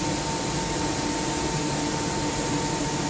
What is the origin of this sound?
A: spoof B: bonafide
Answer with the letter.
B